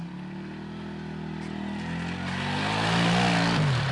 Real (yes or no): yes